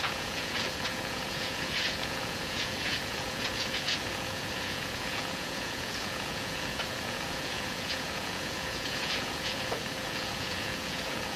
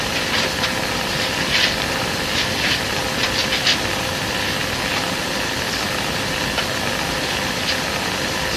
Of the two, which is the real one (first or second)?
second